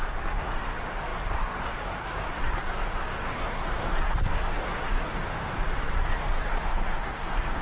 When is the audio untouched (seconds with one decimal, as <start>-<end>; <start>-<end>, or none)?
5.2-5.8